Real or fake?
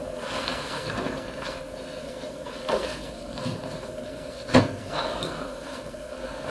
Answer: fake